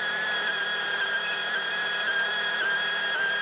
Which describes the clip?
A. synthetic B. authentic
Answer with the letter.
A